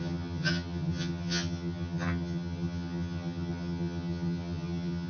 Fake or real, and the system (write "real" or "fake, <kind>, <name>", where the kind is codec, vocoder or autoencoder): fake, vocoder, HiFi-GAN